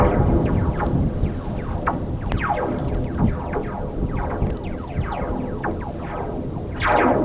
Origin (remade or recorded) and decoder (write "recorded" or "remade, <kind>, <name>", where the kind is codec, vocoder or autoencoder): recorded